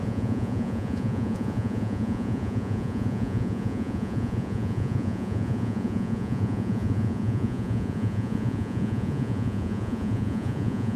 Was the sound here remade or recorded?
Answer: remade